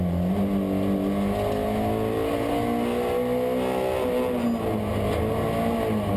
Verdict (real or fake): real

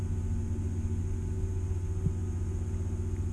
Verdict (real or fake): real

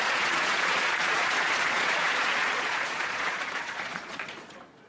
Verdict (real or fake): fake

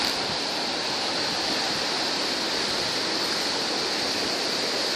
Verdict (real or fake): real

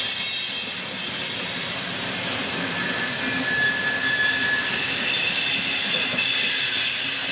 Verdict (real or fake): real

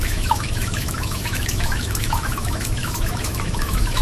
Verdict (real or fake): fake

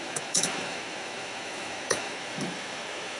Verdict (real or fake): fake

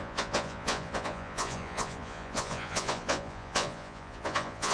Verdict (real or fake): fake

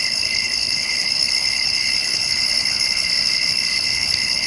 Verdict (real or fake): fake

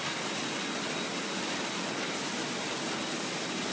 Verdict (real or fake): real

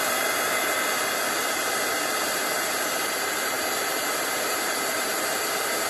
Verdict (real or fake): fake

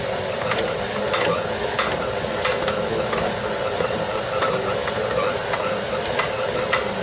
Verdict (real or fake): real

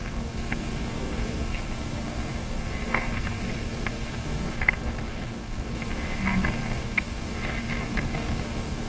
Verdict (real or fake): fake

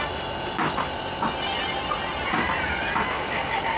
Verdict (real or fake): real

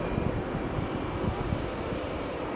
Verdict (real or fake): real